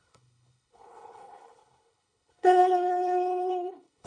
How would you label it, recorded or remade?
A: remade